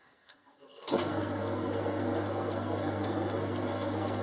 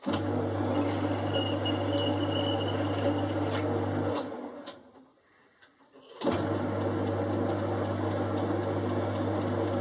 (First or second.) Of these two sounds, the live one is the second